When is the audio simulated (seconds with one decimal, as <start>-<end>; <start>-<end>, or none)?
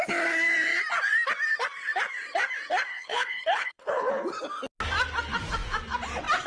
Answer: 2.9-4.2